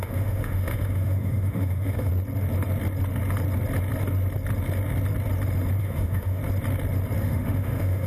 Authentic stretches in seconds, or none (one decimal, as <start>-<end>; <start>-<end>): 2.1-5.8; 6.4-7.2